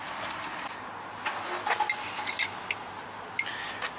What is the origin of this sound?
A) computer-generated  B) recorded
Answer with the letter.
B